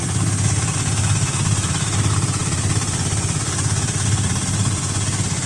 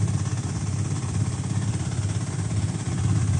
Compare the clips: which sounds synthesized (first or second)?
second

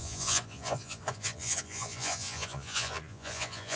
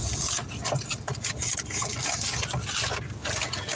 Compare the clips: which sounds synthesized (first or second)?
first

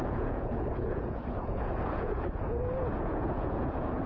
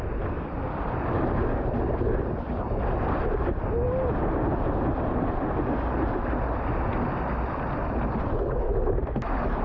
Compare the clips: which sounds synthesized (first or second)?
first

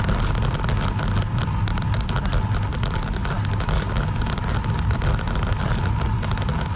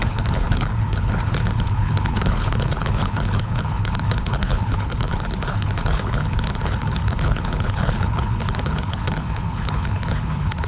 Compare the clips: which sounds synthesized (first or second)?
second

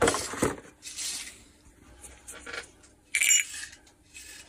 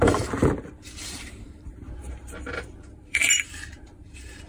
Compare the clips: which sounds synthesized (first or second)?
second